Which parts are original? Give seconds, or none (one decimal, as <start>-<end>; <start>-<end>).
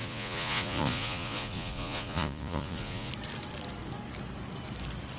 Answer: 3.1-5.2